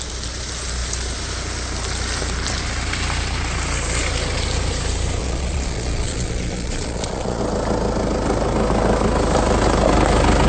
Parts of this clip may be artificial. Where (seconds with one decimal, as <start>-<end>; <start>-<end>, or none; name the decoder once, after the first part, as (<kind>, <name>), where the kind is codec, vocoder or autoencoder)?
5.2-7.4 (vocoder, Vocos)